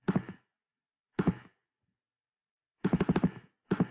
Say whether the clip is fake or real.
real